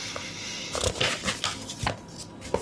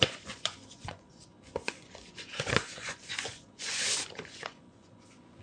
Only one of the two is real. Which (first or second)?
first